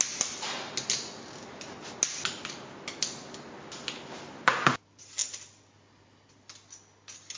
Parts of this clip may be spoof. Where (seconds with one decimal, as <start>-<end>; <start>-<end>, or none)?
none